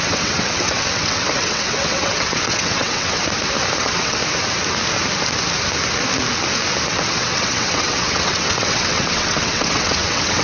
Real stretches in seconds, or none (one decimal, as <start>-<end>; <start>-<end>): 3.2-3.8; 4.2-6.9